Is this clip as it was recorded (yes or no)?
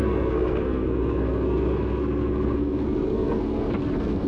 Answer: no